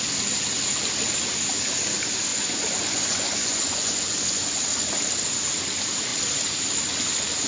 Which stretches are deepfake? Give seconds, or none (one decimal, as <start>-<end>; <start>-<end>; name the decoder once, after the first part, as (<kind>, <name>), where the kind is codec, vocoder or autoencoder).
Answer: 2.3-4.6 (vocoder, Vocos)